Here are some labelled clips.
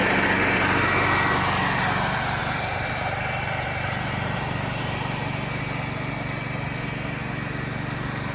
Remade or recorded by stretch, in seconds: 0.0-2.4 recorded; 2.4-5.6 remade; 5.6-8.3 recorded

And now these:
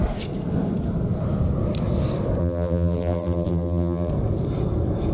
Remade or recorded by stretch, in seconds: 0.0-2.4 recorded; 2.4-4.1 remade; 4.1-5.1 recorded

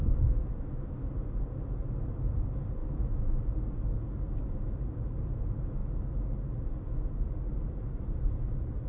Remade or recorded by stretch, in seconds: 0.0-1.1 remade; 1.1-2.8 recorded; 2.8-3.4 remade; 3.4-8.9 recorded

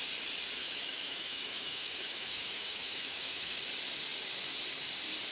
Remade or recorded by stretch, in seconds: 0.0-0.6 recorded; 0.6-3.6 remade; 3.6-5.3 recorded

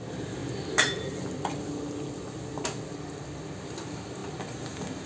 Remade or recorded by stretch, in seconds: 0.0-5.1 recorded